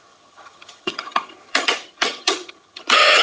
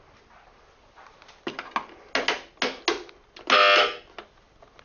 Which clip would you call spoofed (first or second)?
first